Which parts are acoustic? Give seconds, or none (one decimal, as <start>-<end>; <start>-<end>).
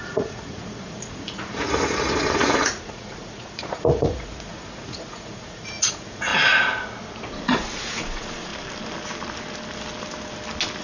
6.3-7.4; 8.5-10.8